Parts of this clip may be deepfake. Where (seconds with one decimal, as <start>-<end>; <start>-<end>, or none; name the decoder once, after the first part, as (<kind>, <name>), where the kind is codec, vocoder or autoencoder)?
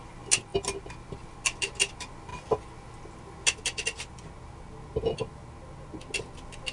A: none